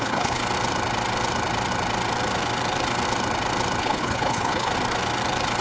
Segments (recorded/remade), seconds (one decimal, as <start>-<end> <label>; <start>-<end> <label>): 0.0-0.4 remade; 0.4-3.8 recorded; 3.8-4.7 remade; 4.7-5.6 recorded